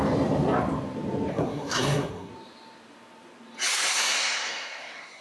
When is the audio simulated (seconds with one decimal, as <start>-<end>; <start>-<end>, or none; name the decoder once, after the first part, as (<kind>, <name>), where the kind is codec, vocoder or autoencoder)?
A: 1.3-2.3 (codec, SNAC); 3.7-5.2